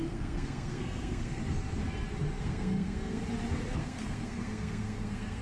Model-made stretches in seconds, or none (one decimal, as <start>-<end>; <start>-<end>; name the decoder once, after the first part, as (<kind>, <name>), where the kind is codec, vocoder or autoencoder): 0.0-1.4 (codec, SNAC); 2.4-3.2; 3.8-5.4